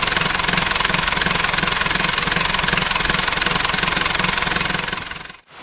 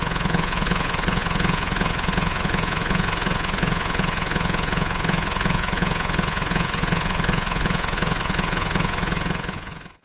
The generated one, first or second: second